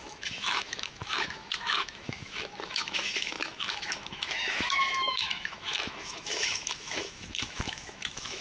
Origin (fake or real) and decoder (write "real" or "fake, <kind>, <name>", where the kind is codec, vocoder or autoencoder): fake, autoencoder, DAC-VAE